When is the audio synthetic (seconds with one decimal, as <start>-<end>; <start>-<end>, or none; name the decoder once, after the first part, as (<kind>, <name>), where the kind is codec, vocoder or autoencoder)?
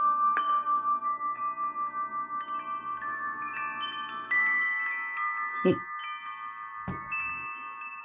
0.0-1.4 (codec, DAC); 3.1-3.5